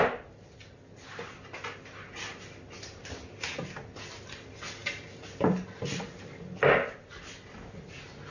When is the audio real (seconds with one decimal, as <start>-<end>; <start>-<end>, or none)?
0.0-8.3